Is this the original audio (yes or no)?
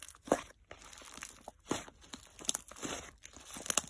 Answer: yes